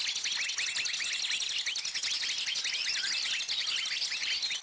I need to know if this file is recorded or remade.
recorded